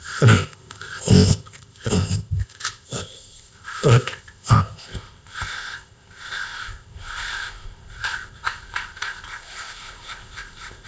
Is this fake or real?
fake